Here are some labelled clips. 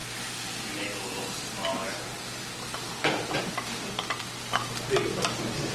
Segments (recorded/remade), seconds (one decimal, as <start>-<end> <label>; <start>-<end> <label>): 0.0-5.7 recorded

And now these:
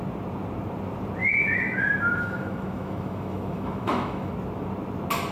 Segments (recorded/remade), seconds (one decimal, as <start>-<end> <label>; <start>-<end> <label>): 0.0-1.2 recorded; 1.2-4.3 remade; 4.3-5.3 recorded

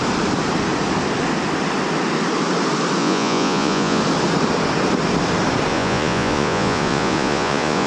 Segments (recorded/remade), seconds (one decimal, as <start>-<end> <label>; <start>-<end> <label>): 0.0-3.0 recorded; 3.0-4.0 remade; 4.0-5.7 recorded; 5.7-7.9 remade

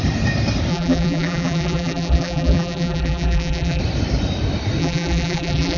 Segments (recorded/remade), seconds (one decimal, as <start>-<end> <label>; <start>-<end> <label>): 0.0-0.7 recorded; 0.7-3.8 remade; 3.8-4.8 recorded; 4.8-5.8 remade

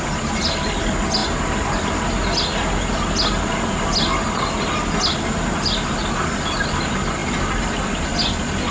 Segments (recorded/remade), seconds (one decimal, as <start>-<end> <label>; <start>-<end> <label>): 0.0-8.7 recorded

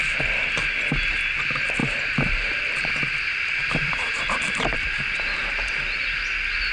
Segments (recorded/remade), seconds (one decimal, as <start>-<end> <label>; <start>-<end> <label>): 0.0-0.5 remade; 0.5-1.8 recorded; 1.8-2.9 remade; 2.9-3.6 recorded; 3.6-5.7 remade; 5.7-6.7 recorded